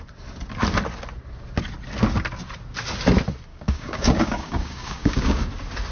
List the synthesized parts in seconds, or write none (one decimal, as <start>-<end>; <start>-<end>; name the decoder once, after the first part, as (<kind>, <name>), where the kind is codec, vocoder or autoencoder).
3.5-5.5 (codec, DAC)